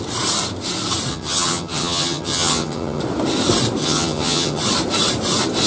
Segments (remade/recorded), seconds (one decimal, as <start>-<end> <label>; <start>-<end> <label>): 0.0-1.1 recorded; 1.1-3.0 remade; 3.0-3.8 recorded; 3.8-4.6 remade; 4.6-5.7 recorded